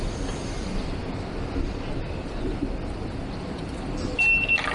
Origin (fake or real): real